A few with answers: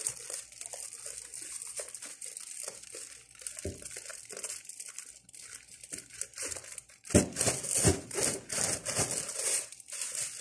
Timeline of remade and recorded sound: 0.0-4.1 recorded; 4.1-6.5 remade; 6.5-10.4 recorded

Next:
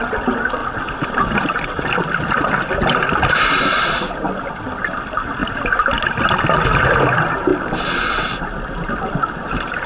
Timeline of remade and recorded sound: 0.0-0.6 recorded; 0.6-3.6 remade; 3.6-9.9 recorded

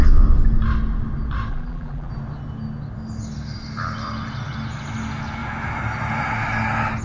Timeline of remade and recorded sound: 0.0-1.5 recorded; 1.5-2.1 remade; 2.1-7.0 recorded

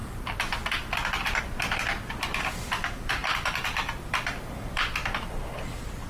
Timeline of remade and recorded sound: 0.0-1.4 remade; 1.4-3.2 recorded; 3.2-4.9 remade; 4.9-6.1 recorded

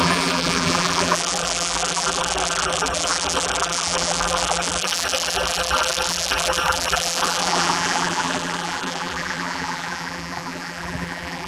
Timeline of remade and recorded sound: 0.0-11.5 remade

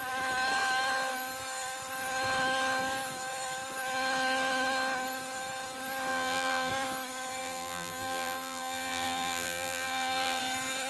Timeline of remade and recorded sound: 0.0-6.1 recorded; 6.1-6.7 remade; 6.7-7.4 recorded; 7.4-10.4 remade; 10.4-10.9 recorded